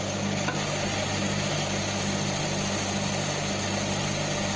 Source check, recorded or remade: recorded